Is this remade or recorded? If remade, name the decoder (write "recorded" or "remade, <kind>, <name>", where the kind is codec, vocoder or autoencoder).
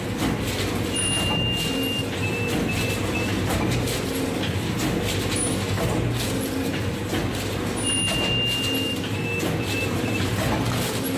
recorded